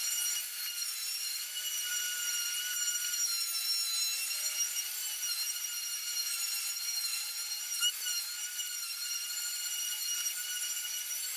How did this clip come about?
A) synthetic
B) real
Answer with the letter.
A